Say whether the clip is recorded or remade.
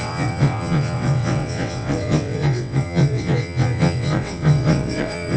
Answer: remade